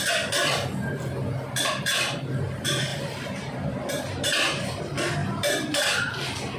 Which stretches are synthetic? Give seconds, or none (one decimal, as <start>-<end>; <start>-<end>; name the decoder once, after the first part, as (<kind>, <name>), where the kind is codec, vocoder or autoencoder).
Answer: 2.9-4.8 (vocoder, BigVGAN v2); 5.2-6.1